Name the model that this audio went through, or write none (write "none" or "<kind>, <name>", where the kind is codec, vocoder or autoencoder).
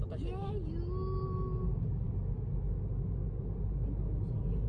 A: none